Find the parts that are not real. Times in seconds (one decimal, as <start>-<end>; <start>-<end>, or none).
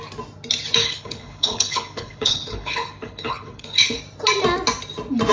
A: 0.8-4.0